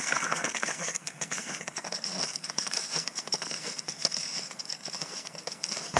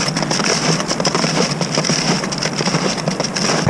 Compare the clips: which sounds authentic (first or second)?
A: second